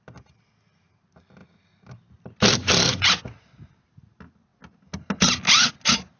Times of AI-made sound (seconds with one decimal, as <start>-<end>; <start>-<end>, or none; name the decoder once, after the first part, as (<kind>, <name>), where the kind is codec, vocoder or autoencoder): none

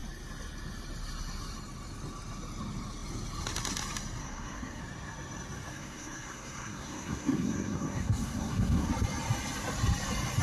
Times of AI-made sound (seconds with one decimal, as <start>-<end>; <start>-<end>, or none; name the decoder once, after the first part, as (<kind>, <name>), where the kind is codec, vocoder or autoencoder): 4.2-4.8 (codec, SNAC); 5.7-8.9

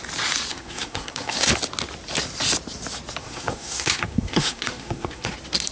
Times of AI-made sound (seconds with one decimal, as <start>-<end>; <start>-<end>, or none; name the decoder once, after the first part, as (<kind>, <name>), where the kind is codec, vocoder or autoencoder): 0.5-1.5 (codec, SNAC); 3.2-5.3

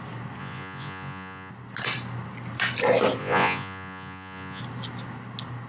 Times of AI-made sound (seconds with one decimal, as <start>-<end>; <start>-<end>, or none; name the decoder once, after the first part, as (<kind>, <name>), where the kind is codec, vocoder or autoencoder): 0.4-1.5 (vocoder, Vocos); 3.2-4.6

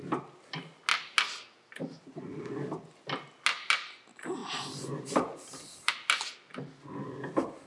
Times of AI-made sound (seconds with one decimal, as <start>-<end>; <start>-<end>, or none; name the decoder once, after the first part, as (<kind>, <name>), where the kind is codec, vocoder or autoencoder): 4.4-5.9 (vocoder, BigVGAN v2)